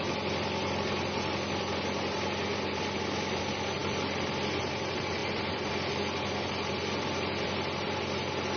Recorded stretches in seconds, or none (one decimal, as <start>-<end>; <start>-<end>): 0.0-8.6